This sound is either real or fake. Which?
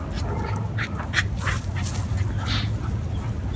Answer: real